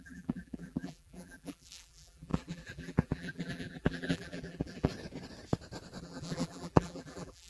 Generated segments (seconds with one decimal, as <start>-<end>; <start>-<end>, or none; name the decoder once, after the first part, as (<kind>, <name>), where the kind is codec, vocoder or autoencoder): 0.0-4.9 (vocoder, BigVGAN v2); 6.0-7.5